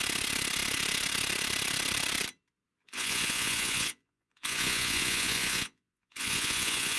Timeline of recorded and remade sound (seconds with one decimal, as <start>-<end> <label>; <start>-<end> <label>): 0.0-2.8 recorded; 2.8-7.0 remade